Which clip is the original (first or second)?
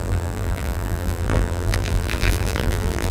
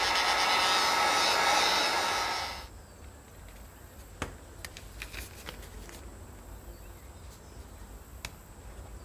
second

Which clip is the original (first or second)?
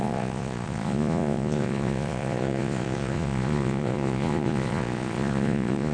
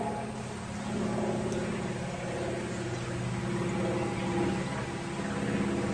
second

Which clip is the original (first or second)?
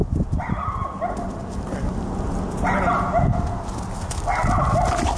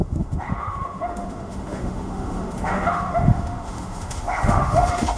first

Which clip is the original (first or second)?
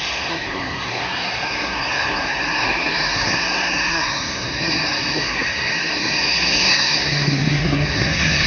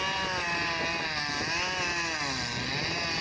second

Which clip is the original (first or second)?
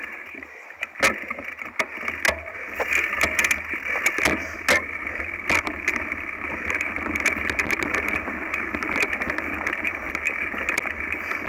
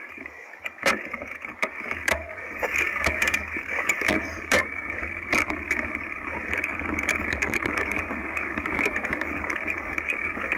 first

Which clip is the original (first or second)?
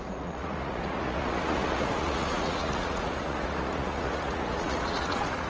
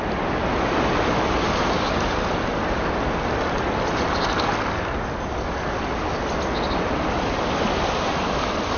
second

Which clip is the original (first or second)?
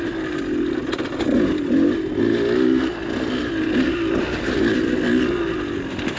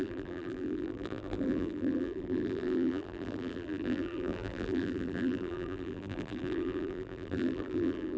first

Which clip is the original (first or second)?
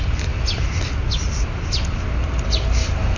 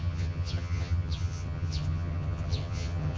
first